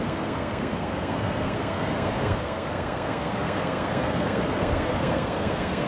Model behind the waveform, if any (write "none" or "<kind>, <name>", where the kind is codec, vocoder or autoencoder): codec, SNAC